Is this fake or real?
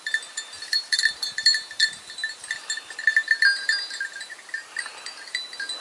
fake